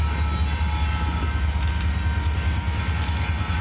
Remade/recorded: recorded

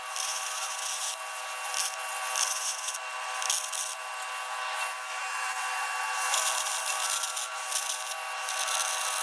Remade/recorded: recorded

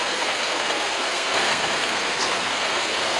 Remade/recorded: remade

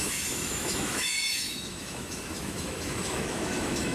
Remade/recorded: remade